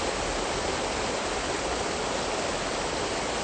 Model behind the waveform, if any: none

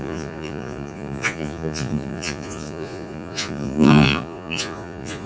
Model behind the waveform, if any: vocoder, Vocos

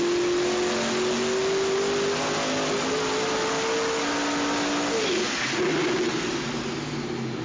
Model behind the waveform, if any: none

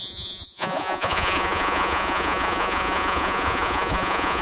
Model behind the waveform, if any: vocoder, Vocos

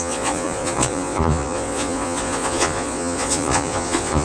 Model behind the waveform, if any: vocoder, Vocos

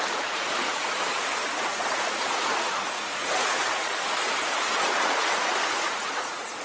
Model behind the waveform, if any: vocoder, Vocos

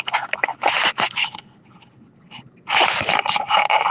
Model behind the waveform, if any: none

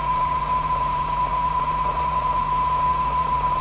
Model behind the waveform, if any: vocoder, Vocos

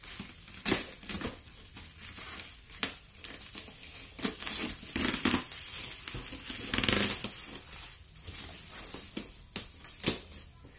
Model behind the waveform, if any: none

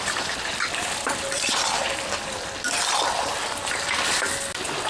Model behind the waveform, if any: none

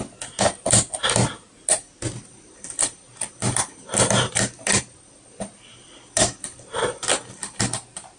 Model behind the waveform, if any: none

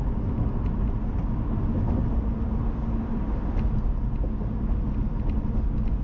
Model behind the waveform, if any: none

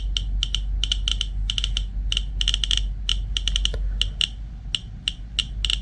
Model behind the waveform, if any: none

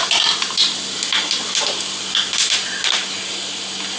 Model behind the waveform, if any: none